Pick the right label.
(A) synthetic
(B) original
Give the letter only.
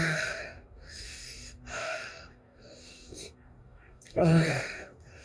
A